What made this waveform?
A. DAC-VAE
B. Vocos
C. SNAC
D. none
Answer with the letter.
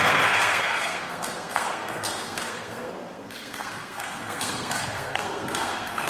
C